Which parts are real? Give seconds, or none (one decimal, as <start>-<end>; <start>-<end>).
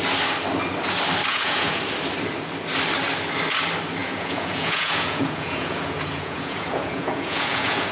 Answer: 0.0-1.3; 1.8-4.0